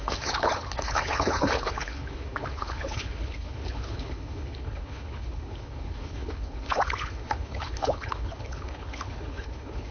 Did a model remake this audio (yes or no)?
yes